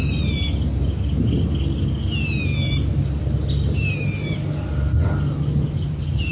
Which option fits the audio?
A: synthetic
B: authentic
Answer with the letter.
B